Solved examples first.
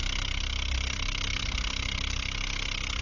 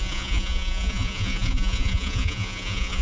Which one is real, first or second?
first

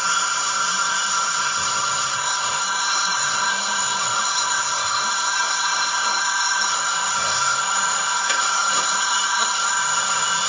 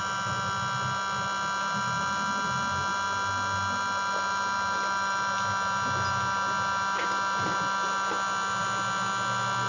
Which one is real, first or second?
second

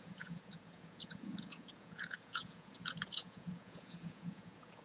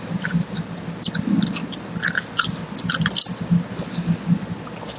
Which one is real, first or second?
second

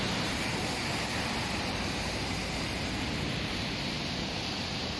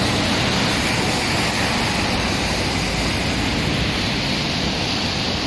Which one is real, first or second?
second